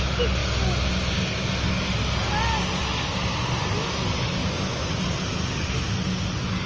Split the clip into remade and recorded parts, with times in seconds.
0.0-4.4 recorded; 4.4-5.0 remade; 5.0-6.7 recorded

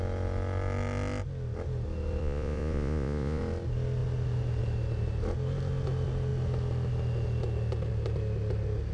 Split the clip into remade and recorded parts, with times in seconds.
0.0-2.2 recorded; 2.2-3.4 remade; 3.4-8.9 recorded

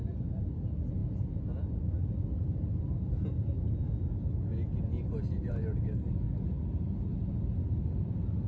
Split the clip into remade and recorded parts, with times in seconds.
0.0-8.5 recorded